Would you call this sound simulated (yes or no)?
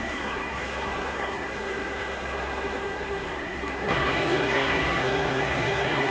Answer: yes